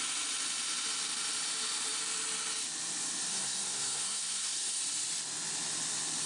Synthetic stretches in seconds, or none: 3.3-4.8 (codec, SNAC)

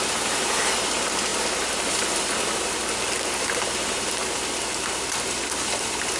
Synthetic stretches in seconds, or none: none

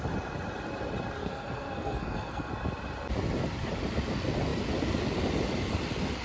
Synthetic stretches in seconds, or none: 1.2-2.5 (codec, SNAC)